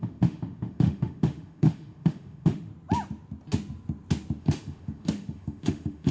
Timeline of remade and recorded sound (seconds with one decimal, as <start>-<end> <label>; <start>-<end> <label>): 0.0-2.7 remade; 2.7-4.4 recorded; 4.4-6.1 remade